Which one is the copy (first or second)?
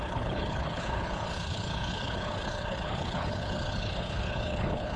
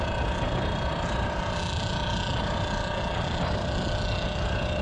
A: first